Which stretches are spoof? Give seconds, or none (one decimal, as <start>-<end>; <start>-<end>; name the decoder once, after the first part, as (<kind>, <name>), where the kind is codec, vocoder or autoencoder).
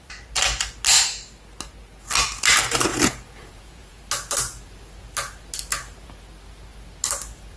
2.9-4.0 (vocoder, Vocos)